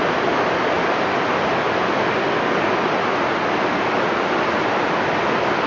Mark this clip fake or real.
real